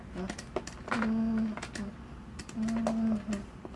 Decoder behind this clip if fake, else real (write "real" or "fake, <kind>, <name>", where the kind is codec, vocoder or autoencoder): real